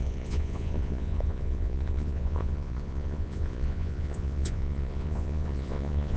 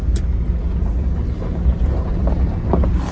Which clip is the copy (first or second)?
first